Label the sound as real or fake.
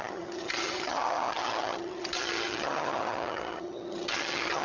fake